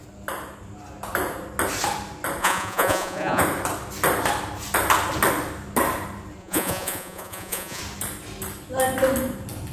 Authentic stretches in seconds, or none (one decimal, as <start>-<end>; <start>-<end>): 0.0-2.4; 3.4-6.4; 7.8-9.7